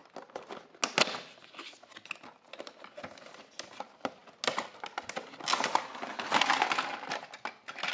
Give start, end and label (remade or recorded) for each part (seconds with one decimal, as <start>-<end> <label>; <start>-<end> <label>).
0.0-7.9 recorded